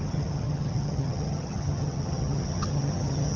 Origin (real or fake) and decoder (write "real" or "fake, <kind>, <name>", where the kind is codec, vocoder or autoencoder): fake, vocoder, HiFi-GAN